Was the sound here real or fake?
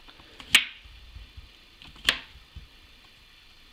real